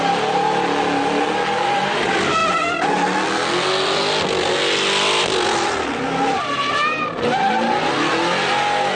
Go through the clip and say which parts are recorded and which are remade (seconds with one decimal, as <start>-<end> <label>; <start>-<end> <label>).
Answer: 0.0-8.9 recorded